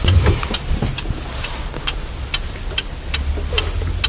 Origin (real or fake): real